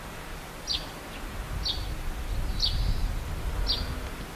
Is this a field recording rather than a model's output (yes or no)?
yes